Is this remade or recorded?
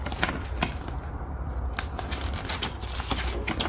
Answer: recorded